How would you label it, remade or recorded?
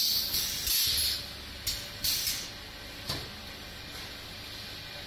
recorded